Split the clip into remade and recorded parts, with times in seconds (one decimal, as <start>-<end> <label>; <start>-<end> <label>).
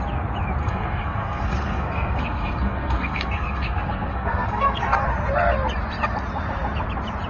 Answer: 0.0-0.6 recorded; 0.6-5.0 remade; 5.0-7.3 recorded